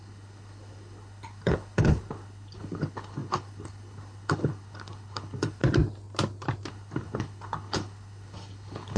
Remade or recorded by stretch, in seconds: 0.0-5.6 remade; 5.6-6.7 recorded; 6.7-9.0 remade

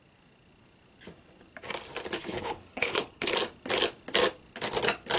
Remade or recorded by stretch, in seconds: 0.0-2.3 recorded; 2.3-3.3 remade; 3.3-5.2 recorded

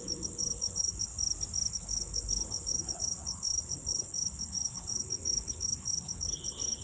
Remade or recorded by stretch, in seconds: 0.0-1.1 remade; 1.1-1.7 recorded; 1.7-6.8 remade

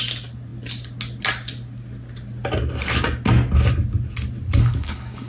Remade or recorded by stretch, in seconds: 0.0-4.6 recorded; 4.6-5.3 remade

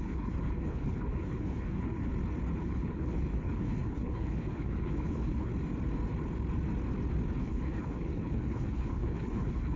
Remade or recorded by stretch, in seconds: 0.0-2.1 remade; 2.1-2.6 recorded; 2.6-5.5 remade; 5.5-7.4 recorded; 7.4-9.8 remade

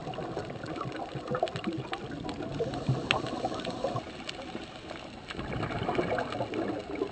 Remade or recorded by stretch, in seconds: 0.0-7.1 recorded

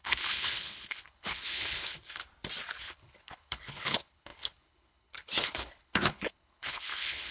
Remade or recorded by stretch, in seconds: 0.0-2.2 remade; 2.2-2.8 recorded; 2.8-7.3 remade